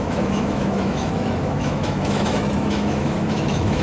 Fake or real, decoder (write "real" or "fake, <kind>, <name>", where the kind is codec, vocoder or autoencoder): fake, autoencoder, DAC-VAE